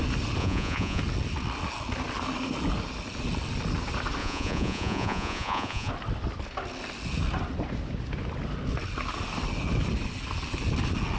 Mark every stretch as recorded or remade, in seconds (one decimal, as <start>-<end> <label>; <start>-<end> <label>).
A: 0.0-0.4 recorded; 0.4-1.0 remade; 1.0-4.2 recorded; 4.2-5.9 remade; 5.9-11.2 recorded